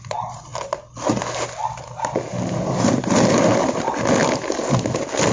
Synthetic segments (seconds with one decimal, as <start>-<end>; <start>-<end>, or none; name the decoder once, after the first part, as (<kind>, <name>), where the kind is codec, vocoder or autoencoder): 0.5-1.1 (vocoder, BigVGAN v2)